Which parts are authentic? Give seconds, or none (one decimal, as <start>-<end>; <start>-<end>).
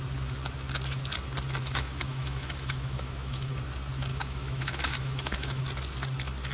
0.0-1.6; 3.5-4.1; 5.6-6.5